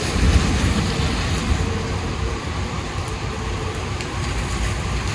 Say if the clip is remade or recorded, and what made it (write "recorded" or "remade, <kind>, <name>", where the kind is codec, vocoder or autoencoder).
remade, vocoder, BigVGAN v2